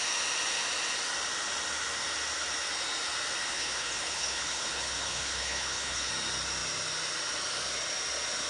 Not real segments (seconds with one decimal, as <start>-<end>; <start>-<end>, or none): 3.4-6.1